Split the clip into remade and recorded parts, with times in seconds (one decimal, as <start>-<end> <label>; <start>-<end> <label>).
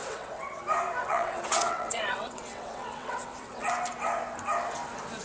0.0-0.6 remade; 0.6-1.0 recorded; 1.0-3.7 remade; 3.7-5.2 recorded